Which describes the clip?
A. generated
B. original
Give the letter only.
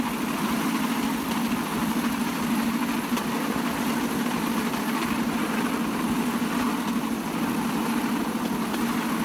B